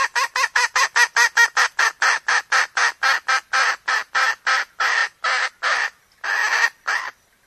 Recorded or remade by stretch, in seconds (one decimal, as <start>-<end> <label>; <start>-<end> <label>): 0.0-7.5 recorded